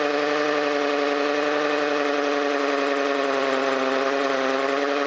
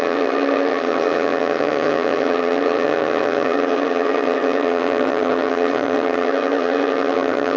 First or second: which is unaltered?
first